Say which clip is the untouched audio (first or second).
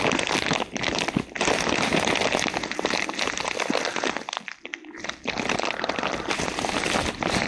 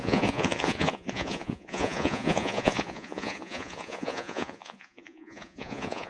first